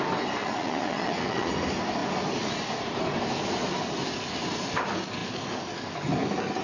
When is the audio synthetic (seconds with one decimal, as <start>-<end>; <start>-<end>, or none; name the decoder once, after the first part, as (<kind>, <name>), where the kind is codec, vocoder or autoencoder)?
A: 0.4-1.5 (vocoder, Vocos)